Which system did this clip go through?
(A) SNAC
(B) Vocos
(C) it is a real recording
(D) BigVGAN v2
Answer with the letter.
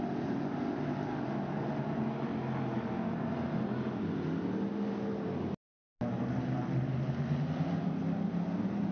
C